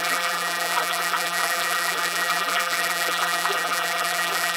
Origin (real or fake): fake